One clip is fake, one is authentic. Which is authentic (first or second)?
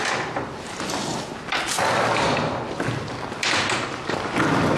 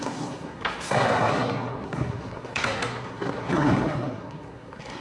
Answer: first